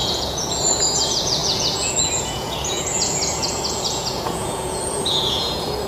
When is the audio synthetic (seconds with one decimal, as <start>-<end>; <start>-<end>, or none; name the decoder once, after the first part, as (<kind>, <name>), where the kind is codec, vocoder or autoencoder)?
0.0-5.9 (vocoder, Vocos)